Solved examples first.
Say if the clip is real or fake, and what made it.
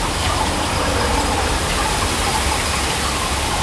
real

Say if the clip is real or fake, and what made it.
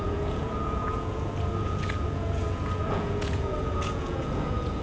fake, vocoder, Vocos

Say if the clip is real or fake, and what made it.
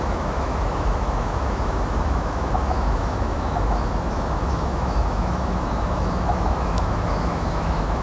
fake, autoencoder, DAC-VAE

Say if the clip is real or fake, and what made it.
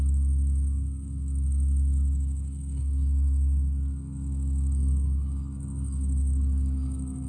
fake, codec, DAC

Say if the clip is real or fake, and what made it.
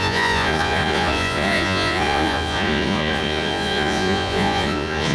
fake, vocoder, Vocos